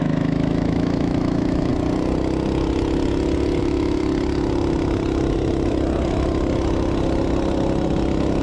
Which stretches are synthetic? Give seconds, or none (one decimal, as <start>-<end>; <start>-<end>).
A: 0.0-1.7; 3.6-4.0